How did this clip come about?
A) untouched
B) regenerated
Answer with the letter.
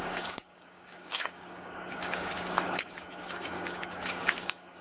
B